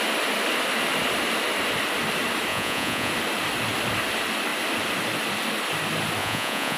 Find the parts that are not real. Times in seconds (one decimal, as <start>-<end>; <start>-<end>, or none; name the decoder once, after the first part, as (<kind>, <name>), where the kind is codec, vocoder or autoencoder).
2.5-3.1 (vocoder, Vocos); 6.2-6.8